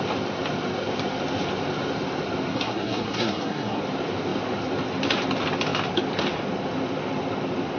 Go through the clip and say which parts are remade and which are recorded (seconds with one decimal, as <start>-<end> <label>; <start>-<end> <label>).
0.0-2.5 recorded; 2.5-3.8 remade; 3.8-7.8 recorded